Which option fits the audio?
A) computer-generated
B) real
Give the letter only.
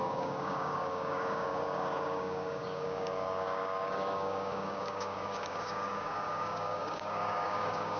A